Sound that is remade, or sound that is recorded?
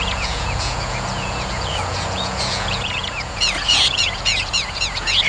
remade